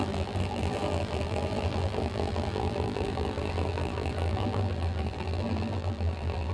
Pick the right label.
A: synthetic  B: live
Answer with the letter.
A